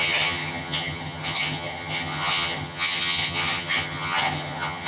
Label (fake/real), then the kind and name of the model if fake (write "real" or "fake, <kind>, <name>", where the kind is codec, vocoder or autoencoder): fake, vocoder, HiFi-GAN